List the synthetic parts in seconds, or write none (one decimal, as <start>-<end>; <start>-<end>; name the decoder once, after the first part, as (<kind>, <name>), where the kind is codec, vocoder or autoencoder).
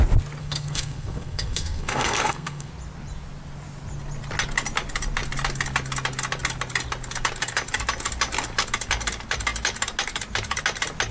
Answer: 0.4-2.7 (codec, SNAC)